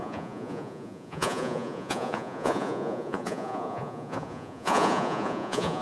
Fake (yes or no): yes